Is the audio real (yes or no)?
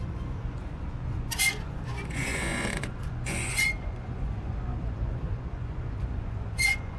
no